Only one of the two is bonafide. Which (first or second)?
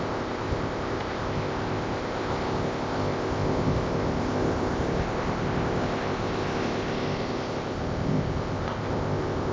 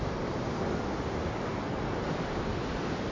second